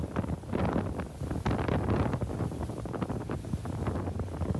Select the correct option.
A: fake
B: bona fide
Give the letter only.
B